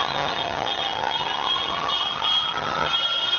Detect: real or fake fake